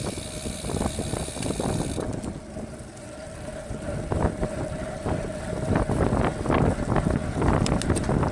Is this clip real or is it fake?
real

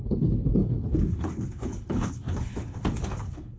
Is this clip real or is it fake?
fake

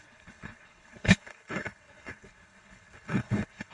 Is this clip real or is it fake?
fake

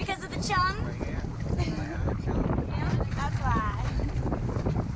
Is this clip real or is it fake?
real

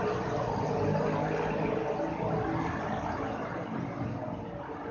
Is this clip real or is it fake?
real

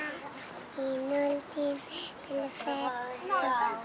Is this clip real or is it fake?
real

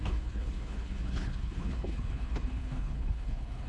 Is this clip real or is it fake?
fake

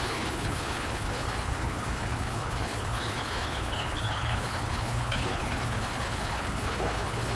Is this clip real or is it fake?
fake